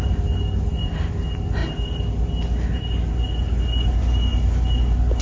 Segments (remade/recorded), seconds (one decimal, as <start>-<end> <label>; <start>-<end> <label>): 0.0-5.2 recorded

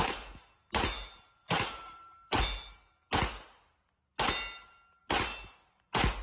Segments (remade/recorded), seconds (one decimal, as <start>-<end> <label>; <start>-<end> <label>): 0.0-1.4 recorded; 1.4-2.4 remade; 2.4-6.2 recorded

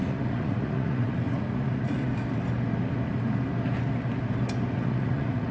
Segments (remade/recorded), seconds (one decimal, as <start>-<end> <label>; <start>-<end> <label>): 0.0-2.1 remade; 2.1-4.7 recorded; 4.7-5.5 remade

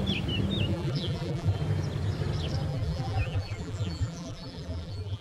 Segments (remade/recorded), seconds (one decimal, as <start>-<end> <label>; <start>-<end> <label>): 0.0-0.7 recorded; 0.7-1.6 remade; 1.6-2.7 recorded; 2.7-5.2 remade

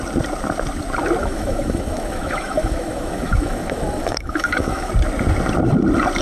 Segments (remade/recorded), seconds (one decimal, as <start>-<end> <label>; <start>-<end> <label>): 0.0-1.2 recorded; 1.2-4.9 remade; 4.9-6.2 recorded

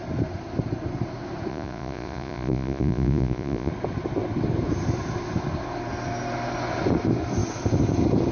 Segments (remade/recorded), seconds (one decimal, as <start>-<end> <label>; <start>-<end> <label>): 0.0-1.5 recorded; 1.5-3.7 remade; 3.7-8.3 recorded